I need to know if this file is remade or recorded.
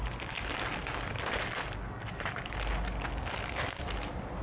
recorded